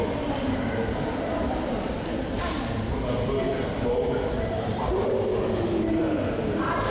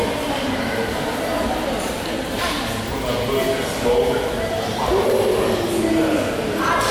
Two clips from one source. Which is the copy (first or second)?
first